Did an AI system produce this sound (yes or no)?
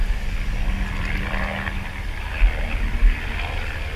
no